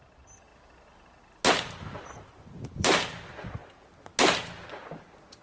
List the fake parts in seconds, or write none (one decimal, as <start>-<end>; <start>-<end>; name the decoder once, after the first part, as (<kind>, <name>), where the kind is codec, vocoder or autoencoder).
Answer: 0.0-0.5 (vocoder, BigVGAN v2); 1.5-3.6; 4.8-5.4